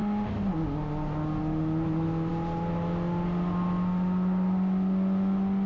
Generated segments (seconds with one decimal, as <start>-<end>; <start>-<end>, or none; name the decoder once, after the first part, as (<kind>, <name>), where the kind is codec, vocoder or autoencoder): none

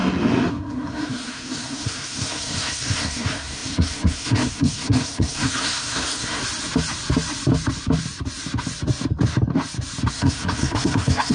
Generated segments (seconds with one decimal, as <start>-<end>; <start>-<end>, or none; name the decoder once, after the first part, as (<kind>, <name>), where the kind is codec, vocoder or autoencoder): 0.5-6.4 (codec, SNAC); 10.1-11.3

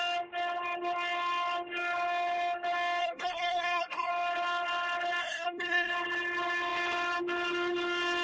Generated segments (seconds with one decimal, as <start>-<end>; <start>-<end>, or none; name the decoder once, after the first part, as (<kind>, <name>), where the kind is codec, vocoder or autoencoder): 3.0-4.1 (codec, SNAC); 5.2-5.9

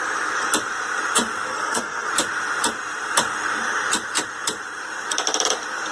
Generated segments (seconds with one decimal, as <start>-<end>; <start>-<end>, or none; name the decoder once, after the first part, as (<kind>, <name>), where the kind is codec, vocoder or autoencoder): 1.5-2.1 (codec, SNAC)

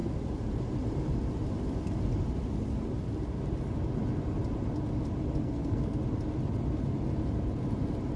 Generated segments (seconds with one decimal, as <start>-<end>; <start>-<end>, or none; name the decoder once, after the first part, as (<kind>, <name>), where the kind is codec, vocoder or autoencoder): 5.4-6.0 (codec, SNAC)

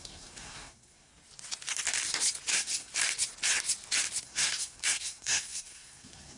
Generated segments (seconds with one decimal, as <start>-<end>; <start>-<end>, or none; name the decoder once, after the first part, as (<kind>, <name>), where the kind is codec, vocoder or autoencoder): 0.0-1.1 (codec, SNAC); 2.5-2.9; 4.2-6.4

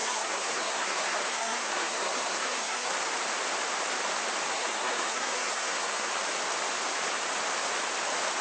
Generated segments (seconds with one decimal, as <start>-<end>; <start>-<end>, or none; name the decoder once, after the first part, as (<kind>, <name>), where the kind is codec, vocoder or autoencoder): 0.0-2.9 (codec, SNAC); 4.5-6.1